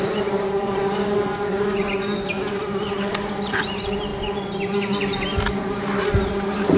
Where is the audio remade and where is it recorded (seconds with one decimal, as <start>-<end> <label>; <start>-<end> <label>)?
0.0-6.8 recorded